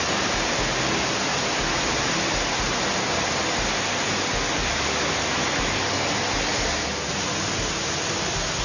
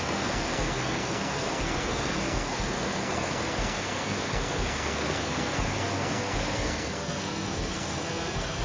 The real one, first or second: first